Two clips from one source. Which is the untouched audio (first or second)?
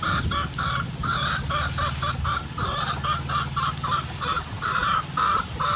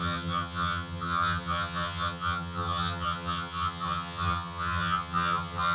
first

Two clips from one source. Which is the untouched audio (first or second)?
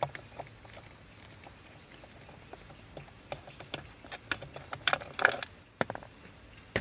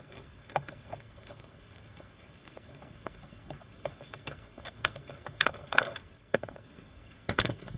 first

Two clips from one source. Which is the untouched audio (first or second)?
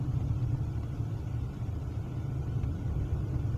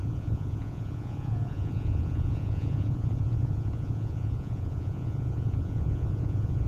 first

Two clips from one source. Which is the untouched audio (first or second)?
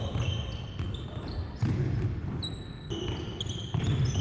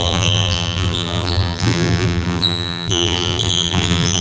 first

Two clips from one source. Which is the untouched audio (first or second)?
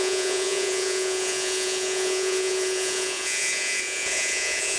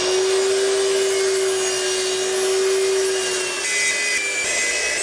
second